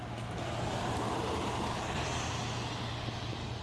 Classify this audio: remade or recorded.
recorded